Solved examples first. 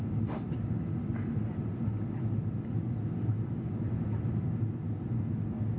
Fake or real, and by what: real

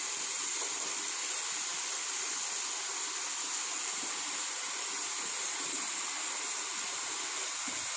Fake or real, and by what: real